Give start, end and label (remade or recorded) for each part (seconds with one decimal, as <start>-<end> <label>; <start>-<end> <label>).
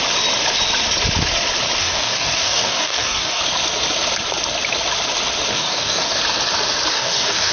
0.0-1.8 recorded; 1.8-3.4 remade; 3.4-5.5 recorded; 5.5-6.2 remade; 6.2-6.9 recorded; 6.9-7.5 remade